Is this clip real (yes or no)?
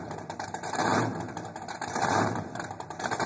no